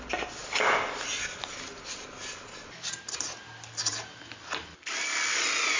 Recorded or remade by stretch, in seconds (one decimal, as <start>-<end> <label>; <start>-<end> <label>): 0.0-5.8 recorded